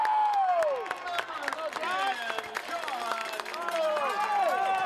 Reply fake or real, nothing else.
real